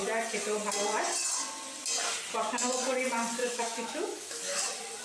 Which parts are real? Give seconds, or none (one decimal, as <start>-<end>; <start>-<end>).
0.0-3.4; 4.6-5.0